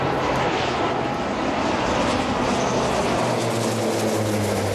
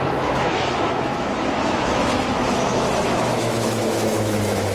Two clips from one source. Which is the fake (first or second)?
second